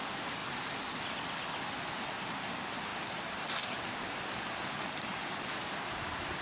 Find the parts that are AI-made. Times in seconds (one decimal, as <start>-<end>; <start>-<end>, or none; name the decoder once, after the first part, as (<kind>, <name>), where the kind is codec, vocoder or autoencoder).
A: 0.0-0.4 (vocoder, BigVGAN v2); 2.1-5.2; 5.8-6.4